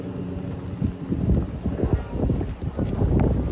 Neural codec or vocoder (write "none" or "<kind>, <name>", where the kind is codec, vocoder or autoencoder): none